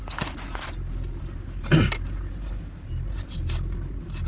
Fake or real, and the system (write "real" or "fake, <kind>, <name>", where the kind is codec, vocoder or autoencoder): real